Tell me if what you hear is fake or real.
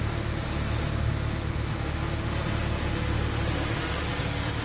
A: real